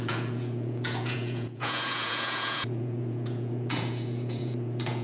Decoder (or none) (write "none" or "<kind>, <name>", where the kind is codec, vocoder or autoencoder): vocoder, Vocos